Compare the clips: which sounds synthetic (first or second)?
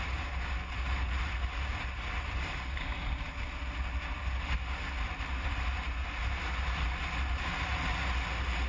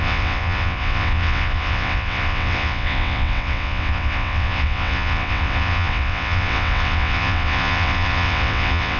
second